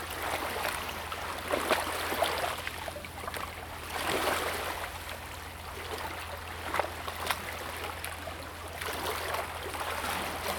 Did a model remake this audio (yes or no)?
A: no